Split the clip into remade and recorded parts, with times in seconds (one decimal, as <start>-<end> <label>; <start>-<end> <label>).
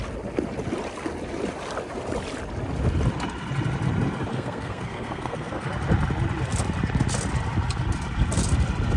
0.0-4.3 recorded; 4.3-5.7 remade; 5.7-9.0 recorded